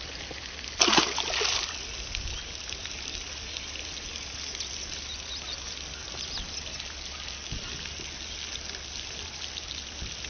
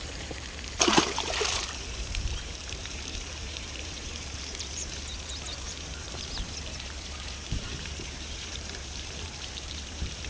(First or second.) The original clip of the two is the first